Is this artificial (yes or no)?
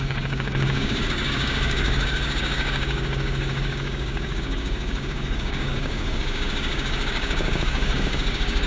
yes